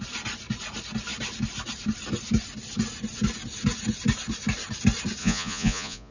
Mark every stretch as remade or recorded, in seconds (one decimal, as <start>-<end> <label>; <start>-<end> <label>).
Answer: 0.0-5.2 recorded; 5.2-6.1 remade